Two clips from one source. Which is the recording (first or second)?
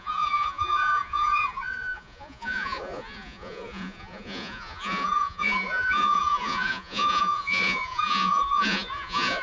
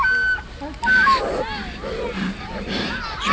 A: second